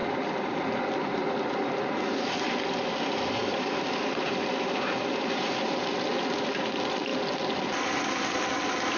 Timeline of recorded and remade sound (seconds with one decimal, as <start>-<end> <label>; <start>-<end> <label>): 0.0-1.8 remade; 1.8-3.4 recorded; 3.4-6.1 remade; 6.1-9.0 recorded